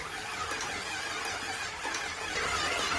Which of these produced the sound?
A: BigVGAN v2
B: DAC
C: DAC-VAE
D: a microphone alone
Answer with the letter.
D